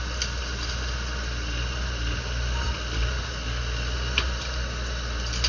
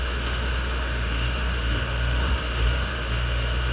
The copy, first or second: second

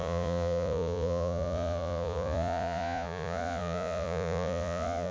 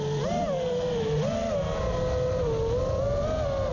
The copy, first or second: first